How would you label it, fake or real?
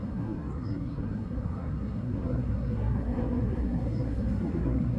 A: fake